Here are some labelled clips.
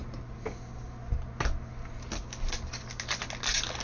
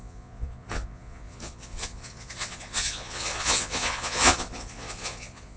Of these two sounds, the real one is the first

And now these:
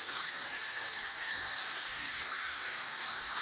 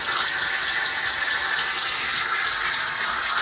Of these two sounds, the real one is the second